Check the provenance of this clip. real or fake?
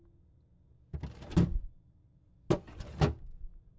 real